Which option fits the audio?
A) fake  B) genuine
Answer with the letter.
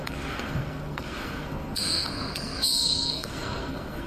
A